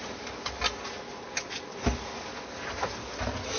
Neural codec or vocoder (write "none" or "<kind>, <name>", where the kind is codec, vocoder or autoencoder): none